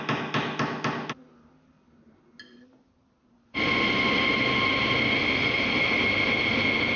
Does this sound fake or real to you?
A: real